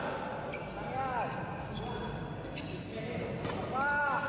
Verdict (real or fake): real